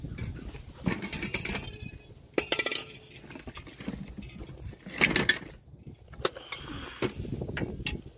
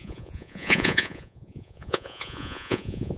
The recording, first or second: first